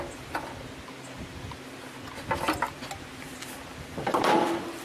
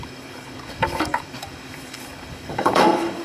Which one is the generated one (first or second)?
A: second